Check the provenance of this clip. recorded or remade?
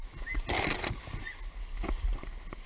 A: recorded